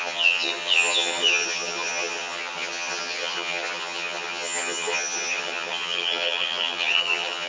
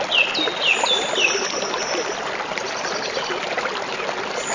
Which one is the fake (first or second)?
first